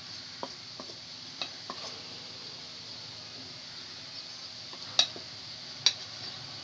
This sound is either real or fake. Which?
real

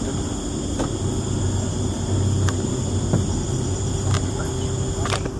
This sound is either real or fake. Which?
real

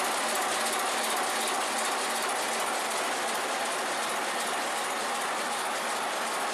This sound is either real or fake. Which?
real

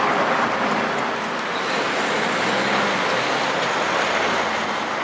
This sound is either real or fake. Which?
real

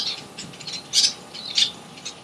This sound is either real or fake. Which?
real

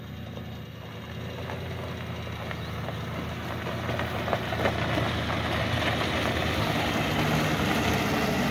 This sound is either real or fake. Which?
real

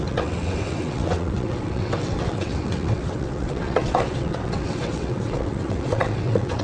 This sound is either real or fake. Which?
fake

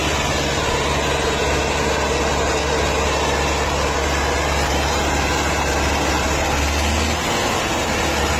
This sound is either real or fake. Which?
real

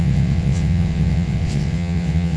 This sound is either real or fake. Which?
fake